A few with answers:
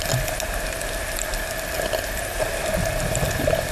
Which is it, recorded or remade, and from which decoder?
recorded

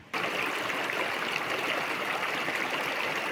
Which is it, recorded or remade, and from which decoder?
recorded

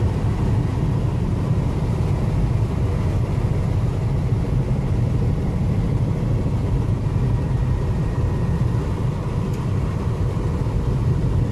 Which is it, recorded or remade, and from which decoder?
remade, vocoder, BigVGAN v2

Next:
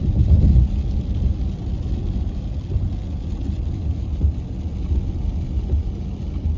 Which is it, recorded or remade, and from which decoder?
recorded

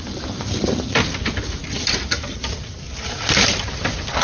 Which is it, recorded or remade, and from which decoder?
recorded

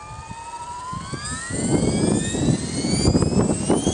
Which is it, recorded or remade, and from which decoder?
recorded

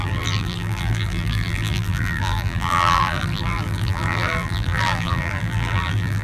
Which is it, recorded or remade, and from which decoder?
remade, vocoder, BigVGAN v2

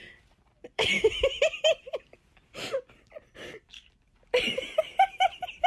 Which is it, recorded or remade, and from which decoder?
remade, vocoder, BigVGAN v2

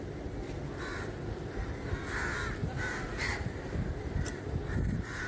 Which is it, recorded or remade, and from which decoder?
remade, vocoder, BigVGAN v2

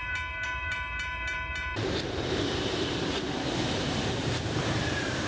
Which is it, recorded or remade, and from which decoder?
remade, vocoder, BigVGAN v2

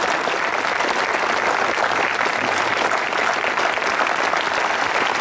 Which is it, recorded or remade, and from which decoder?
recorded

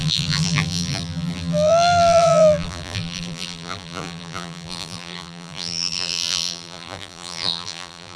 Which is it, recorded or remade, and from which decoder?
remade, vocoder, BigVGAN v2